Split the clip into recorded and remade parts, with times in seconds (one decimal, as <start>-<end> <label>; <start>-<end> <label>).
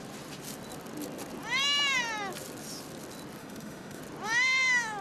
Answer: 0.0-3.4 recorded; 3.4-4.0 remade; 4.0-5.0 recorded